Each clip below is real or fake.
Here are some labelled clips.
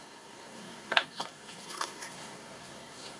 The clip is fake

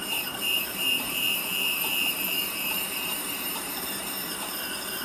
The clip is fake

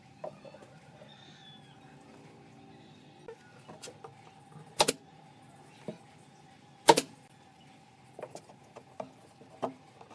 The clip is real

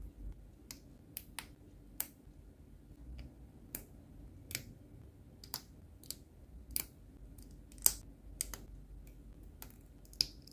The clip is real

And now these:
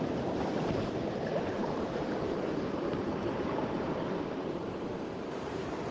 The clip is fake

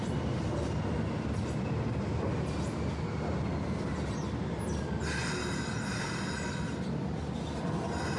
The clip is real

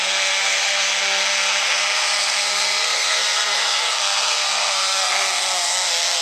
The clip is fake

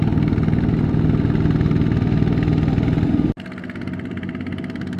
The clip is real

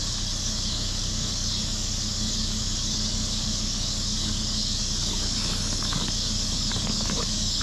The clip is fake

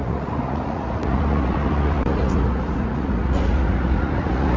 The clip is fake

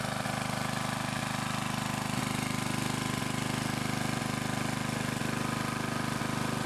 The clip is real